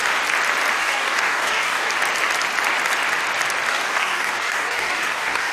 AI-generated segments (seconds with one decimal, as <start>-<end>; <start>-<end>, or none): 0.8-1.9; 3.7-5.5